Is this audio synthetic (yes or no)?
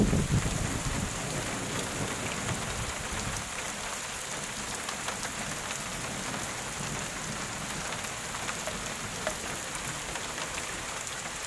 no